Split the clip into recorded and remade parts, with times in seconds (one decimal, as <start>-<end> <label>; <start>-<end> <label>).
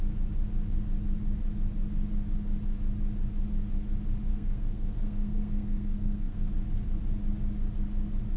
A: 0.0-4.3 recorded; 4.3-6.5 remade; 6.5-8.4 recorded